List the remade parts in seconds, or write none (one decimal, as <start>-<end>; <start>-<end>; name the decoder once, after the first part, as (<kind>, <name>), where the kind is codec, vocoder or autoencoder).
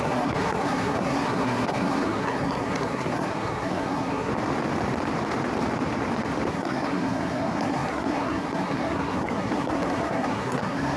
0.0-4.3 (codec, SNAC); 6.5-11.0